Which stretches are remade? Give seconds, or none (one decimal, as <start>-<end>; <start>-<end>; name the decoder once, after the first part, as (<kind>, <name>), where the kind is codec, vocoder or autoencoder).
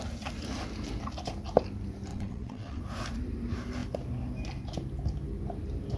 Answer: 2.1-2.8 (vocoder, WaveNeXt)